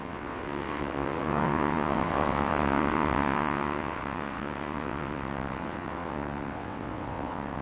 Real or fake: fake